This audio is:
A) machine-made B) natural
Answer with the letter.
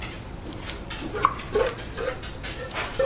B